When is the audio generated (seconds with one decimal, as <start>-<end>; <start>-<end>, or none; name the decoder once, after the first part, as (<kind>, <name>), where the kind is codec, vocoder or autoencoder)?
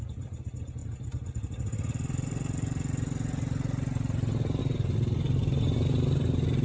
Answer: none